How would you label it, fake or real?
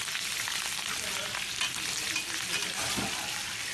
real